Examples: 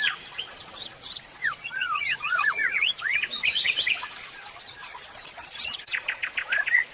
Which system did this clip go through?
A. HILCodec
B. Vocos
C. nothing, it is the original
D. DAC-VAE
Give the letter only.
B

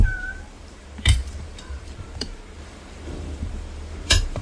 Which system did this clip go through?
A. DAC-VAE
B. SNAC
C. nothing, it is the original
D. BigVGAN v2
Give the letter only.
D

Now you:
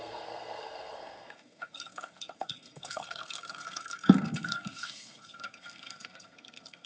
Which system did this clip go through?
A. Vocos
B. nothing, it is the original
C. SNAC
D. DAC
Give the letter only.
C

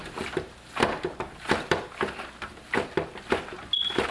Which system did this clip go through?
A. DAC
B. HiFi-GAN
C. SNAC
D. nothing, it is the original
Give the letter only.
D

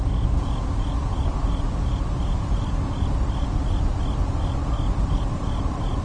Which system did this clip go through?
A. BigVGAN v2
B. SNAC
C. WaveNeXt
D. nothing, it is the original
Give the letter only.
D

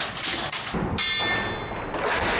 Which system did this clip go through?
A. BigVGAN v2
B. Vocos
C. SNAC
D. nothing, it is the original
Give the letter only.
D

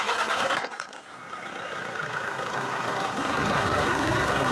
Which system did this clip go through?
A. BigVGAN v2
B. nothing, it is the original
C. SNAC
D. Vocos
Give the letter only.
C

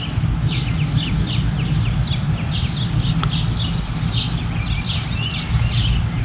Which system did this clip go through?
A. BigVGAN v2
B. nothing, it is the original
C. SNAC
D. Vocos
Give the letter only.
B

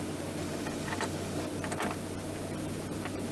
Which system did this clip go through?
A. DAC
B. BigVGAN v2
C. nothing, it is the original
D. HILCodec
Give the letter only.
C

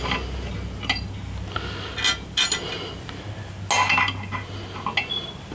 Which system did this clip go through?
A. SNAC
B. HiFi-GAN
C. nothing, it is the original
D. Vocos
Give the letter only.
C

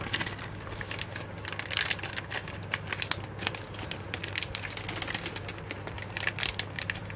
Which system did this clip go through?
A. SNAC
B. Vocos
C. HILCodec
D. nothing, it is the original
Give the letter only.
D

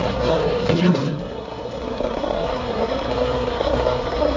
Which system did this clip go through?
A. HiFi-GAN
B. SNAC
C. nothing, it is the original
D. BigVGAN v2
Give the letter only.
B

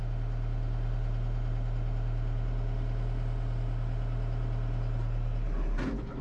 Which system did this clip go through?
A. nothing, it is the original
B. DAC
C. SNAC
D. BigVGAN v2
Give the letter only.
A